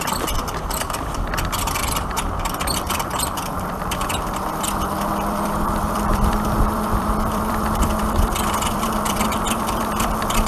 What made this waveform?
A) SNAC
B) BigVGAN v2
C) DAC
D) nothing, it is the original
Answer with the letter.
B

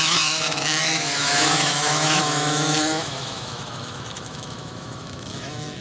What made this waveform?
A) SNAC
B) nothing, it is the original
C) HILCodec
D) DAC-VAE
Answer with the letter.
D